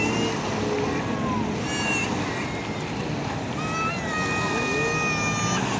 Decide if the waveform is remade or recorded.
recorded